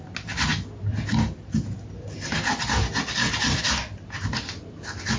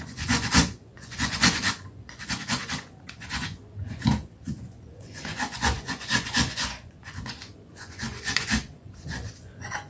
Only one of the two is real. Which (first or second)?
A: first